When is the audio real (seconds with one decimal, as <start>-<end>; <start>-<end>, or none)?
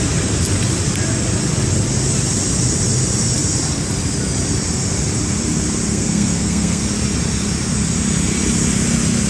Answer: 0.0-5.9; 6.8-9.3